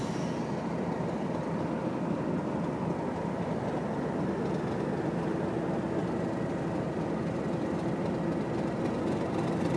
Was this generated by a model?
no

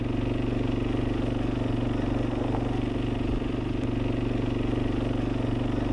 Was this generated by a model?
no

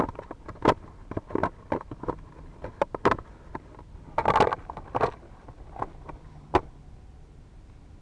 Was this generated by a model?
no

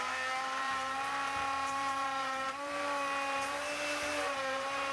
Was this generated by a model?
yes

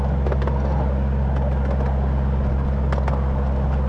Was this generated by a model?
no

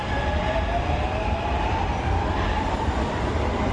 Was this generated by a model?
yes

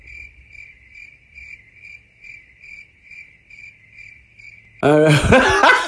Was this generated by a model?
no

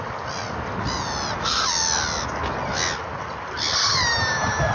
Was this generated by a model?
no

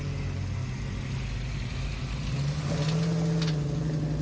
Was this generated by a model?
no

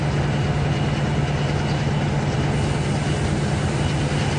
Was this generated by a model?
no